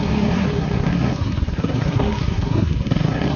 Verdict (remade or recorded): remade